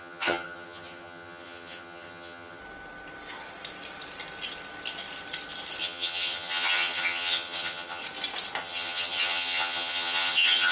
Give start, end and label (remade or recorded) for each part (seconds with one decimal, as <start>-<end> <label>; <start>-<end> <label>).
0.0-2.6 remade; 2.6-5.8 recorded; 5.8-8.0 remade; 8.0-8.6 recorded; 8.6-10.7 remade

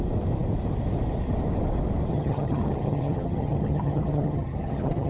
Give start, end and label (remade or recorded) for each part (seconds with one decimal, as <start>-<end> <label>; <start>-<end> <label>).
0.0-2.1 recorded; 2.1-5.1 remade

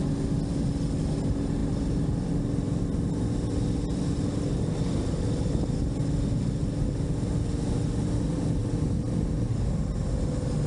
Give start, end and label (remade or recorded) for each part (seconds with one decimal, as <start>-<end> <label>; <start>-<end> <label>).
0.0-10.7 recorded

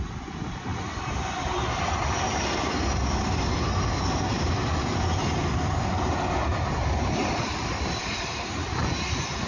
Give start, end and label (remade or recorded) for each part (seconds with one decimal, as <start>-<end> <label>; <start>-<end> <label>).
0.0-0.7 recorded; 0.7-3.4 remade; 3.4-4.3 recorded; 4.3-6.1 remade; 6.1-6.5 recorded; 6.5-8.0 remade; 8.0-9.5 recorded